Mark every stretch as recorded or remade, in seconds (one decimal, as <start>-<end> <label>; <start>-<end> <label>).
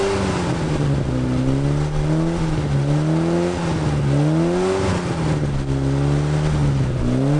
0.0-7.4 recorded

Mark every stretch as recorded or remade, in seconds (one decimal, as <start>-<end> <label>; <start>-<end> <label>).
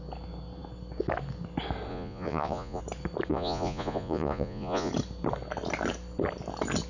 0.0-1.9 recorded; 1.9-2.8 remade; 2.8-3.3 recorded; 3.3-4.9 remade; 4.9-6.9 recorded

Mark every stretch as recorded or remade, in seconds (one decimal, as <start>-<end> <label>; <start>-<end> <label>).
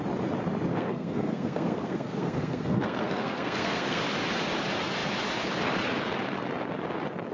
0.0-0.7 recorded; 0.7-4.0 remade; 4.0-7.3 recorded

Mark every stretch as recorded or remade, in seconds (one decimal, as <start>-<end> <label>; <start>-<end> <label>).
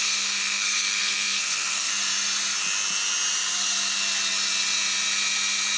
0.0-1.9 remade; 1.9-5.8 recorded